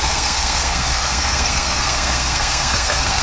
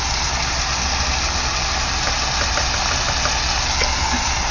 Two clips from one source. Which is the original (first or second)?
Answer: second